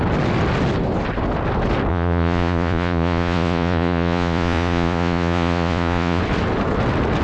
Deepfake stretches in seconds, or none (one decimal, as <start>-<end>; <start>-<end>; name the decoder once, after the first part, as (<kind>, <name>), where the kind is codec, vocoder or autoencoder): 1.9-6.2 (vocoder, Vocos)